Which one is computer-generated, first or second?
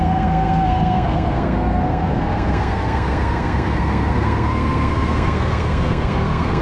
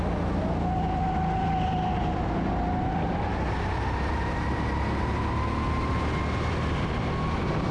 first